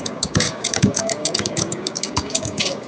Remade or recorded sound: remade